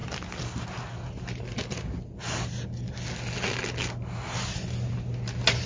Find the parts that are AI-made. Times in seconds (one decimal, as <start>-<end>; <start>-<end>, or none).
none